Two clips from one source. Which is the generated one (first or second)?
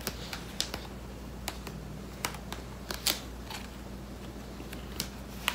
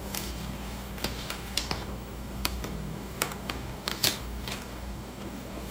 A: second